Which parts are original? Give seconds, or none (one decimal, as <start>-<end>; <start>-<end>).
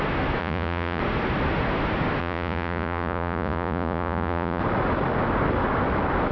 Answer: 0.0-0.4; 1.0-2.2; 4.6-6.3